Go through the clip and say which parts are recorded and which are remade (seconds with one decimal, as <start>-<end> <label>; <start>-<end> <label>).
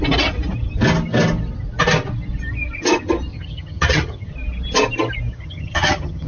0.0-3.3 recorded; 3.3-4.3 remade; 4.3-5.3 recorded; 5.3-6.3 remade